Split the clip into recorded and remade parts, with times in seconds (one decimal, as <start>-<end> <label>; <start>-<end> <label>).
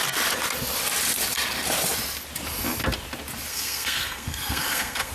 0.0-3.5 recorded; 3.5-5.1 remade